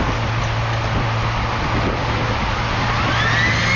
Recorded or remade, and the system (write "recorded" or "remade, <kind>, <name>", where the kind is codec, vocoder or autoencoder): recorded